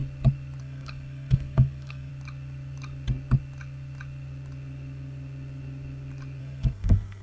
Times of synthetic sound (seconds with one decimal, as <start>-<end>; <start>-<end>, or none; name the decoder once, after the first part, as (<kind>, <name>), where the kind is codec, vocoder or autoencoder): 0.6-2.1 (codec, SNAC); 6.4-7.2